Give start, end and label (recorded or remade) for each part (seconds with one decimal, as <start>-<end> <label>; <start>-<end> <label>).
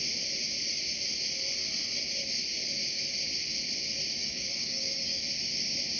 0.0-4.2 recorded; 4.2-5.2 remade; 5.2-6.0 recorded